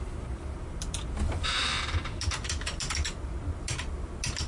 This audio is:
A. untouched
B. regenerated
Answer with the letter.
A